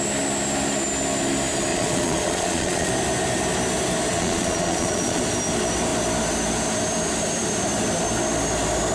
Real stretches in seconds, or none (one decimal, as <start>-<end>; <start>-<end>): 0.0-1.7; 2.9-4.1; 5.2-8.9